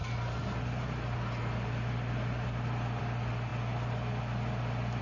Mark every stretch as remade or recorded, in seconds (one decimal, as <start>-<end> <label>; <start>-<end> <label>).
0.0-5.0 recorded